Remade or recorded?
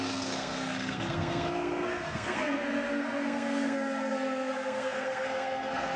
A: remade